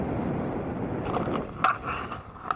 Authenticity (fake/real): real